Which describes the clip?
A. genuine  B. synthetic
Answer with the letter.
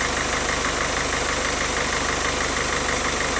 A